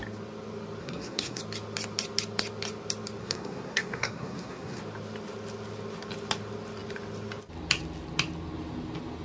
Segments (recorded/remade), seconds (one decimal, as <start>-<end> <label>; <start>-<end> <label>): 0.0-0.8 recorded; 0.8-1.4 remade; 1.4-3.2 recorded; 3.2-4.8 remade; 4.8-9.2 recorded